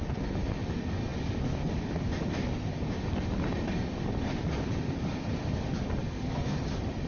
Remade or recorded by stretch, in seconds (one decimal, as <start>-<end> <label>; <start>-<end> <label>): 0.0-6.0 recorded; 6.0-6.6 remade; 6.6-7.1 recorded